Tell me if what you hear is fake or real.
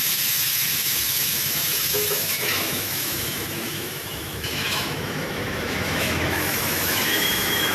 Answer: fake